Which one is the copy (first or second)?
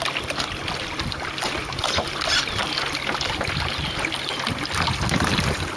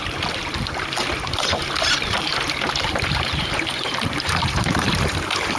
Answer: second